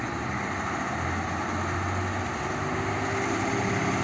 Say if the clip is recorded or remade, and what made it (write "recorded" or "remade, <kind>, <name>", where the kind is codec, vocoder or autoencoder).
recorded